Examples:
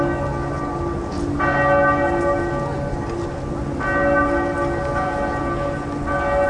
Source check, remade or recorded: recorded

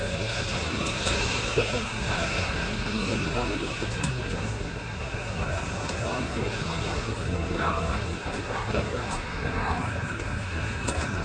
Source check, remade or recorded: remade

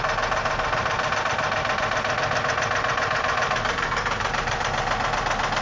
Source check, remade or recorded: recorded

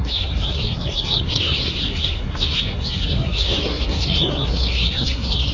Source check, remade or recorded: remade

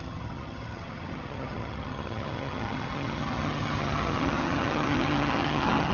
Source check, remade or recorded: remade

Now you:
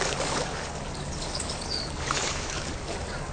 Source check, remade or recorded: remade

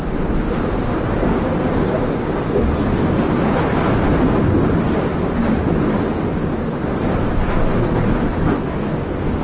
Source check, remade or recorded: recorded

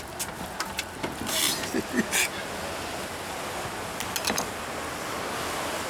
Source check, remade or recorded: recorded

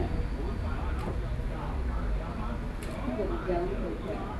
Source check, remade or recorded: recorded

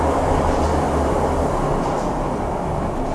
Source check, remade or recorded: recorded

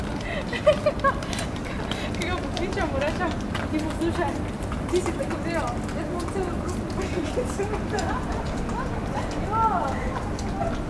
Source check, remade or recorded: recorded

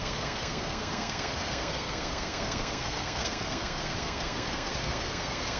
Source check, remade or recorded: remade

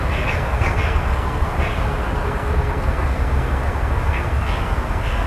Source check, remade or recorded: remade